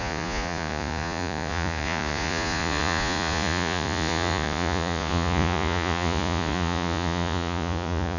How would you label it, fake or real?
fake